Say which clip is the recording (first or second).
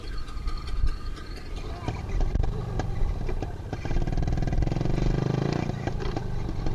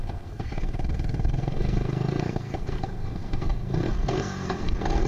first